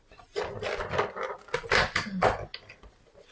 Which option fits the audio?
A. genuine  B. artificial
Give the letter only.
A